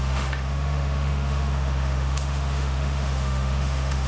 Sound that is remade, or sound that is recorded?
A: remade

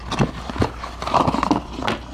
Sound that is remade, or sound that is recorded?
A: recorded